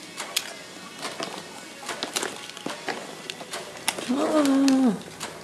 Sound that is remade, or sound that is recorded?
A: recorded